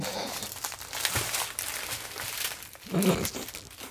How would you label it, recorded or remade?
recorded